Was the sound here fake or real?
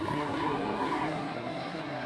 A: fake